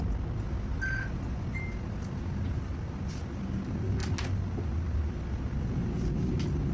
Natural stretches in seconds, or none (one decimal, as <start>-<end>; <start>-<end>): 0.0-6.7